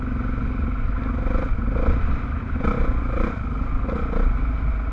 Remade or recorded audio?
recorded